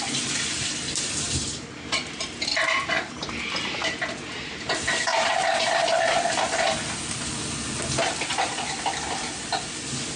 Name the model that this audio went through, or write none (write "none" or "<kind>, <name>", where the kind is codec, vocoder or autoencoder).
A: none